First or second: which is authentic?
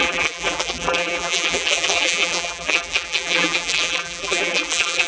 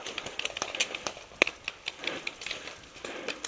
second